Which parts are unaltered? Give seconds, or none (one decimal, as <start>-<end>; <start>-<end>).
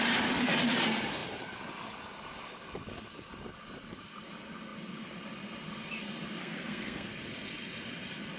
0.0-6.4; 7.1-8.4